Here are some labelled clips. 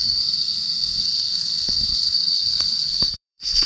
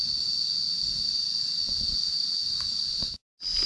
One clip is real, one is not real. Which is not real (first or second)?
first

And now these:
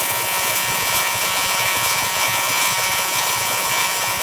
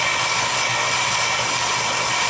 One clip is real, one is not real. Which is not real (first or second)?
first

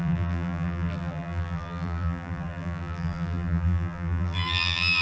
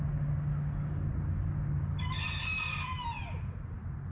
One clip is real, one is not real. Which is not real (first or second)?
first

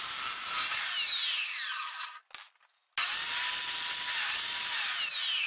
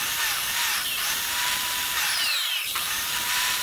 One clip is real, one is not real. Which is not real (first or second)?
second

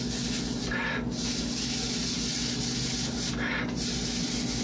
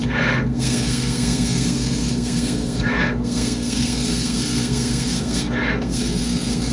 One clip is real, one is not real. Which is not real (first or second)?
second